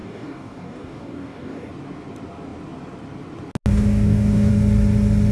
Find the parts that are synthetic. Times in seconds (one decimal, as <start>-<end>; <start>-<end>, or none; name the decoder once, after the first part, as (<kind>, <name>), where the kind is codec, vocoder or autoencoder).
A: 0.0-1.7 (codec, DAC); 3.7-4.5